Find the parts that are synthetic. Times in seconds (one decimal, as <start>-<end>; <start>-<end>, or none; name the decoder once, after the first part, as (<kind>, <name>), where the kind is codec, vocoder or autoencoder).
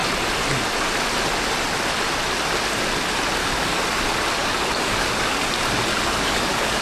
3.4-4.0 (codec, DAC); 4.4-5.5; 5.9-6.8